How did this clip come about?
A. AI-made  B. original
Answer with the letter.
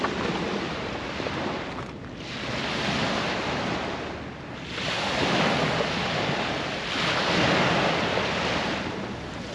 B